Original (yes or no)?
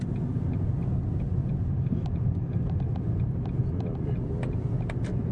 yes